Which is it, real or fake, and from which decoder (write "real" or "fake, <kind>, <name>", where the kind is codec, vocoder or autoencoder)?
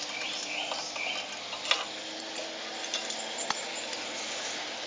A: real